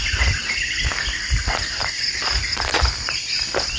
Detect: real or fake fake